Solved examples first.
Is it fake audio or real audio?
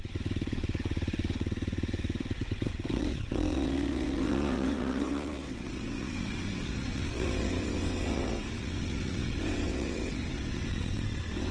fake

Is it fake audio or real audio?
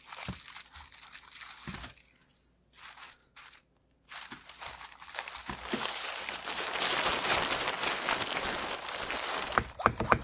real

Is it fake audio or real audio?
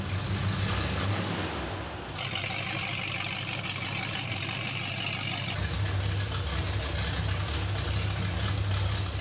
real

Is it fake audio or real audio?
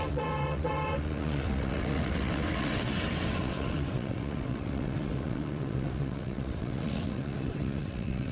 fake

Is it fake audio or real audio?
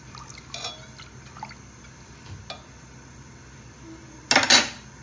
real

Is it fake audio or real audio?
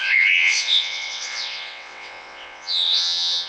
fake